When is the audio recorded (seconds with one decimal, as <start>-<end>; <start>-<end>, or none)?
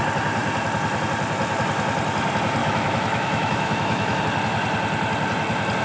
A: 0.0-2.6; 4.2-5.8